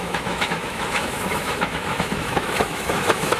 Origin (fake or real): fake